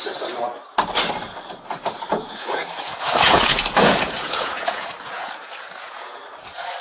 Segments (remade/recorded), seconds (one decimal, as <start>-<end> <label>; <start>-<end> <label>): 0.0-2.1 recorded; 2.1-6.2 remade; 6.2-6.8 recorded